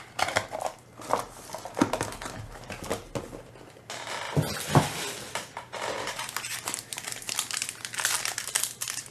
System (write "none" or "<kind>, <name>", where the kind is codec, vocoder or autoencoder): none